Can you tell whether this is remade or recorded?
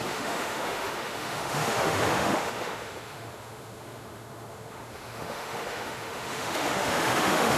remade